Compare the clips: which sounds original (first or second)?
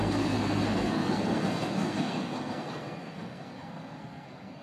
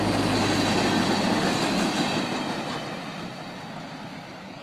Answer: second